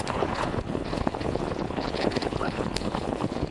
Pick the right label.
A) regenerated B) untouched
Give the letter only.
A